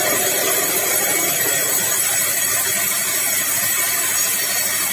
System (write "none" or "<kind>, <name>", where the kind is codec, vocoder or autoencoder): none